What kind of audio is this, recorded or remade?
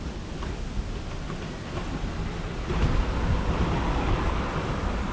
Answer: recorded